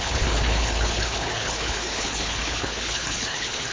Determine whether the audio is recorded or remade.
remade